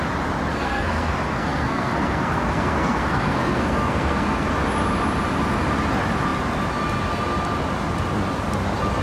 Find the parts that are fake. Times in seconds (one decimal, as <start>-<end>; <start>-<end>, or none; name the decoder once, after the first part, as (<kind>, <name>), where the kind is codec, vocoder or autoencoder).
0.5-4.5 (codec, SNAC)